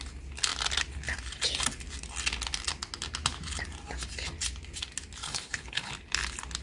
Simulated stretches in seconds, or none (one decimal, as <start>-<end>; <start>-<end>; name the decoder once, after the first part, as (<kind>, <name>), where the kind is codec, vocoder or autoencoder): 5.2-5.9 (codec, HILCodec)